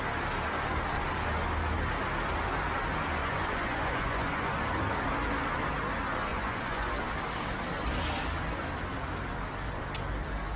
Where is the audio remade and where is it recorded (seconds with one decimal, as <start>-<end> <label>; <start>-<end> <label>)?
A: 0.0-3.2 recorded; 3.2-4.5 remade; 4.5-6.3 recorded; 6.3-6.9 remade; 6.9-10.6 recorded